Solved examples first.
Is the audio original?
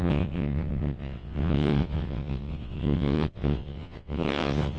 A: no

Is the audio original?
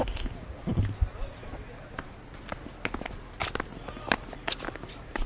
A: yes